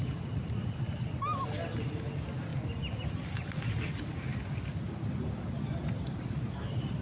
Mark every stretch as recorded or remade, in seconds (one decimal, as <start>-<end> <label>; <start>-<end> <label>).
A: 0.0-7.0 recorded